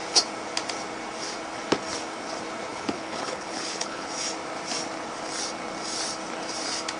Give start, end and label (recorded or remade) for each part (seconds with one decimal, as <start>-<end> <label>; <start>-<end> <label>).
0.0-2.7 recorded; 2.7-4.1 remade; 4.1-7.0 recorded